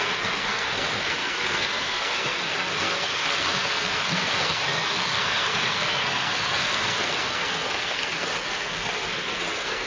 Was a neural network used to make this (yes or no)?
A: yes